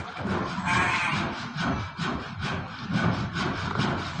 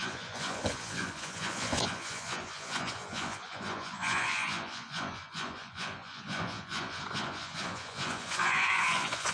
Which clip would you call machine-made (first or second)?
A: second